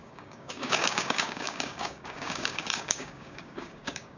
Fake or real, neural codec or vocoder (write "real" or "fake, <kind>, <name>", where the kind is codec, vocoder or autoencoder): fake, codec, DAC